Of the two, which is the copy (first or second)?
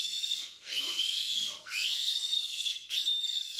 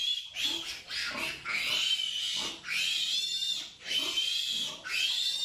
first